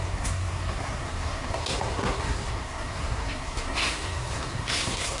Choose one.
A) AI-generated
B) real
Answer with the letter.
A